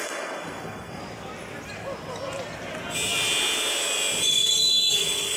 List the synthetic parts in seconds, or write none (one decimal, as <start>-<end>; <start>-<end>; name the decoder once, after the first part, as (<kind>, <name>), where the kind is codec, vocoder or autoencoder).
0.0-1.0 (codec, SNAC); 4.2-5.4